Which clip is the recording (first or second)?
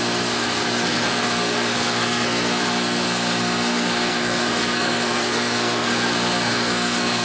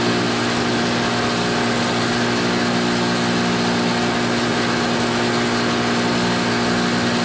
second